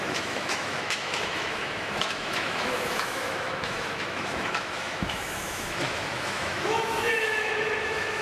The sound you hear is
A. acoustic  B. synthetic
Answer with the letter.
B